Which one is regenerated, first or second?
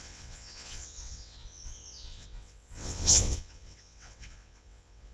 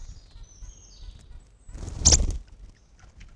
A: first